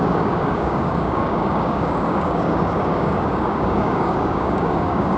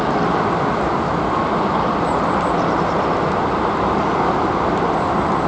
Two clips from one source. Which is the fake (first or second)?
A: first